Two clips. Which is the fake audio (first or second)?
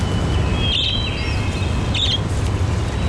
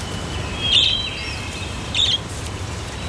second